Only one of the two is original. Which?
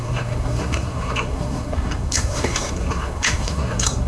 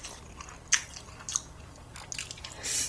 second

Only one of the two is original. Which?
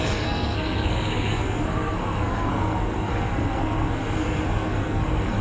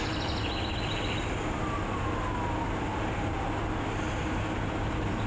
second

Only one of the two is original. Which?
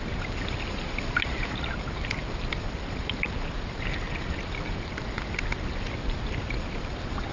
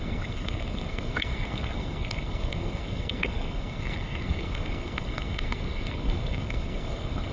first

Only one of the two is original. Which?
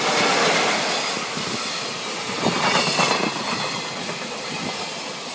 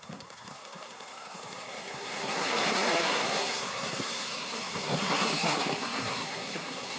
first